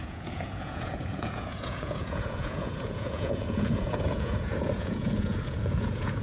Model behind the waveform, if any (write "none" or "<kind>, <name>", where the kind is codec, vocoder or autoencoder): vocoder, Vocos